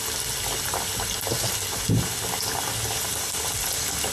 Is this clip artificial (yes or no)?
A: no